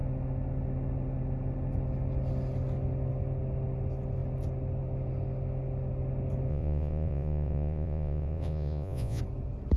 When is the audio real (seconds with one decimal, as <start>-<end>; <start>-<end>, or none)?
0.0-6.5; 9.2-9.8